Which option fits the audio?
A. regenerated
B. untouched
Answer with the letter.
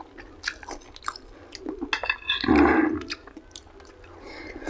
B